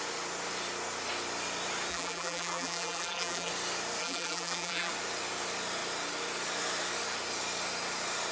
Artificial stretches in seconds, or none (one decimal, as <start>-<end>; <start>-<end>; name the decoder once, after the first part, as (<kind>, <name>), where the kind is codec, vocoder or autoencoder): 1.9-3.5 (vocoder, BigVGAN v2); 4.0-4.9